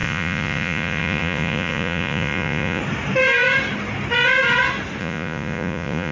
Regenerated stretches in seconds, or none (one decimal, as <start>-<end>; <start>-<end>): 0.0-2.8; 5.0-6.1